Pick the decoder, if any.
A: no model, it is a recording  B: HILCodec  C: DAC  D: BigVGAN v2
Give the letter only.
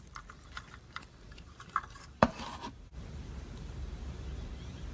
D